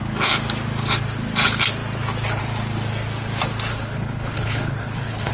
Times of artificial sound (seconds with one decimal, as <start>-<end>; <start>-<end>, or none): 3.7-5.3